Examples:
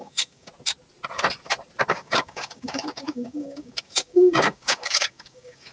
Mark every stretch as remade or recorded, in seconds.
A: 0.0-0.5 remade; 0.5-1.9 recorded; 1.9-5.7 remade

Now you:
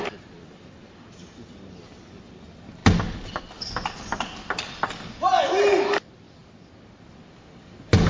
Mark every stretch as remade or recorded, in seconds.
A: 0.0-8.1 recorded

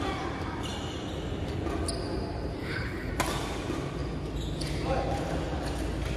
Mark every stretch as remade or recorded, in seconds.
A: 0.0-2.6 recorded; 2.6-3.1 remade; 3.1-6.2 recorded

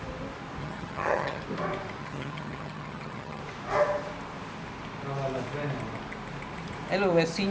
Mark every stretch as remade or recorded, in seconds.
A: 0.0-0.6 recorded; 0.6-1.4 remade; 1.4-2.0 recorded; 2.0-3.4 remade; 3.4-7.5 recorded

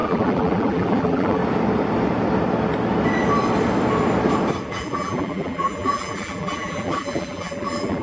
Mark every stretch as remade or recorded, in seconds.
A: 0.0-1.4 remade; 1.4-4.7 recorded; 4.7-8.0 remade